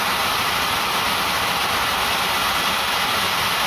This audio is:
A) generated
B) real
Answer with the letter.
B